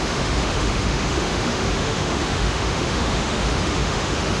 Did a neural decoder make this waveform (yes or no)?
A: yes